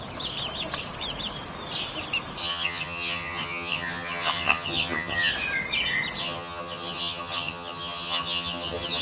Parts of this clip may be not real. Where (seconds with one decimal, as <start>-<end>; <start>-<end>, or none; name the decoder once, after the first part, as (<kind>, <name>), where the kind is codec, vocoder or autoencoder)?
2.4-5.3 (vocoder, HiFi-GAN); 6.2-9.0